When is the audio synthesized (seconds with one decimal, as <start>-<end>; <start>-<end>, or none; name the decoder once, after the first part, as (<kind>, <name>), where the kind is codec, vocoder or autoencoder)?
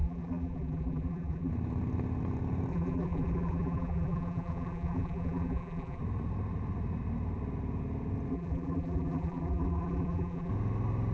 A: 0.0-1.5 (vocoder, BigVGAN v2); 2.7-6.0; 8.3-10.5